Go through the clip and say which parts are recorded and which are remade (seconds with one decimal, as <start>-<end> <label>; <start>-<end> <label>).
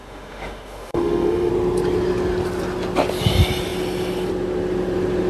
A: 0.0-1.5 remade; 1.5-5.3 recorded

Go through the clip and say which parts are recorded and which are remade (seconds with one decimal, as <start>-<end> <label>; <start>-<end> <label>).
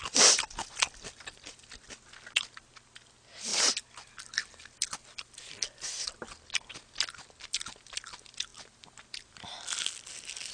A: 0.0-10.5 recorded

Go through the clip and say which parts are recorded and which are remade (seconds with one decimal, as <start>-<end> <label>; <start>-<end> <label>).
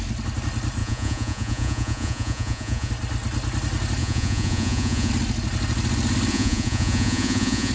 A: 0.0-0.8 recorded; 0.8-2.9 remade; 2.9-4.0 recorded; 4.0-5.1 remade; 5.1-6.3 recorded; 6.3-7.7 remade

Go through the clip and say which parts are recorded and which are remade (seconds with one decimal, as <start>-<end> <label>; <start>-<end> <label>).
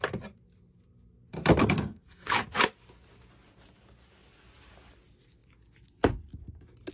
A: 0.0-1.6 recorded; 1.6-2.3 remade; 2.3-6.9 recorded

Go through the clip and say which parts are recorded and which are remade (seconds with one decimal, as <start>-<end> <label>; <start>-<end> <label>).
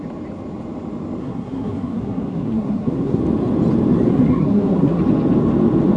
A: 0.0-1.2 recorded; 1.2-3.2 remade; 3.2-4.1 recorded; 4.1-5.0 remade; 5.0-6.0 recorded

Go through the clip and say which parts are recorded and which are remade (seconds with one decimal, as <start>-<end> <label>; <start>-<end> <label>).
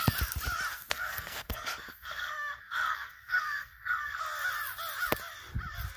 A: 0.0-0.7 recorded; 0.7-4.2 remade; 4.2-6.0 recorded